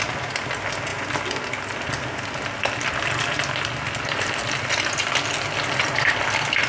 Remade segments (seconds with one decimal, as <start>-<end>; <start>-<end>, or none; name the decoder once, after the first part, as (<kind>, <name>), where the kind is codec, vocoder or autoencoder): none